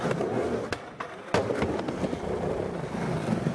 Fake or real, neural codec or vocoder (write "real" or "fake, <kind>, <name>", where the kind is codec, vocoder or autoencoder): real